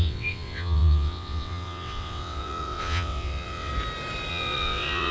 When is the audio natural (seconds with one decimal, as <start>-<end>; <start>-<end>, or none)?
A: 3.7-4.3